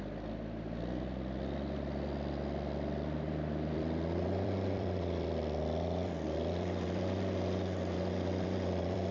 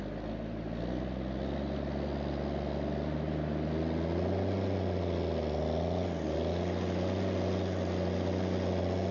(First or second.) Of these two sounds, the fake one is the first